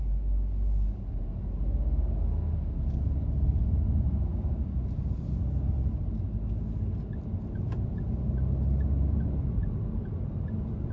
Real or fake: real